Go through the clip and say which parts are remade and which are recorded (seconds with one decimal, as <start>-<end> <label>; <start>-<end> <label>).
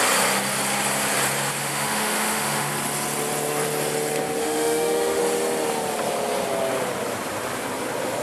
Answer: 0.0-1.6 recorded; 1.6-2.7 remade; 2.7-4.4 recorded; 4.4-5.2 remade; 5.2-8.2 recorded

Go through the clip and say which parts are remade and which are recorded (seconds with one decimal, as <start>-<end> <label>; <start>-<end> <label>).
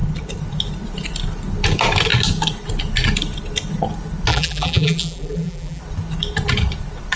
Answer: 0.0-4.3 recorded; 4.3-5.8 remade; 5.8-7.2 recorded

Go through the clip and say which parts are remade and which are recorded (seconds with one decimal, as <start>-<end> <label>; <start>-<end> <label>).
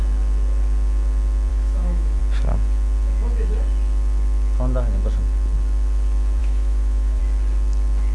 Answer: 0.0-1.5 recorded; 1.5-2.2 remade; 2.2-6.4 recorded; 6.4-7.2 remade; 7.2-8.1 recorded